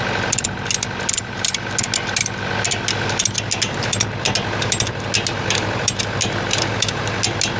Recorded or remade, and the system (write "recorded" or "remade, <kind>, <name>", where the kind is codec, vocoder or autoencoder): recorded